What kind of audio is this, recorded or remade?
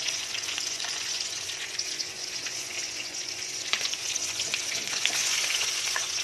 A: remade